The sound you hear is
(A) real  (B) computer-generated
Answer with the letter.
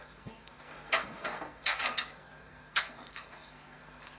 B